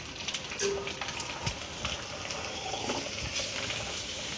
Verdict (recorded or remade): recorded